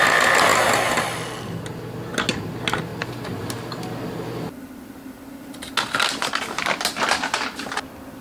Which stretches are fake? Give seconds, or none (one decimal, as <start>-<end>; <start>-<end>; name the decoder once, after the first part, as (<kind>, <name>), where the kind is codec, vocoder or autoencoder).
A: none